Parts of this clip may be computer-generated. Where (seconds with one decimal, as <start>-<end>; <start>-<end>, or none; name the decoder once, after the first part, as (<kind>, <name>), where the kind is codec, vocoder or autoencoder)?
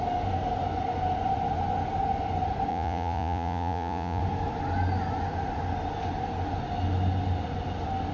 2.7-4.2 (vocoder, Vocos)